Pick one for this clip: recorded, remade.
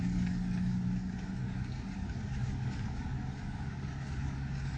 remade